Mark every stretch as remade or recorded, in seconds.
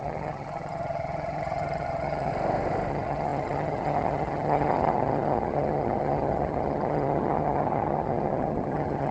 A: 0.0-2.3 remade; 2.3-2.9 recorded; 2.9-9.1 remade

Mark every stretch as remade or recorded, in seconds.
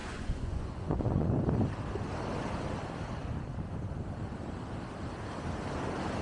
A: 0.0-1.3 remade; 1.3-6.2 recorded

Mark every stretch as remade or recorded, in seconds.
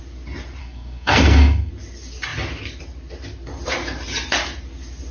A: 0.0-0.6 recorded; 0.6-1.7 remade; 1.7-5.1 recorded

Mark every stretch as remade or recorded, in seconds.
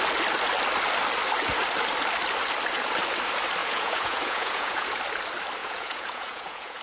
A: 0.0-3.6 recorded; 3.6-5.0 remade; 5.0-5.6 recorded; 5.6-6.8 remade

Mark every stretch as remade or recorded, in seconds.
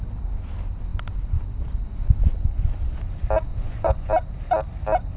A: 0.0-3.5 recorded; 3.5-4.1 remade; 4.1-5.2 recorded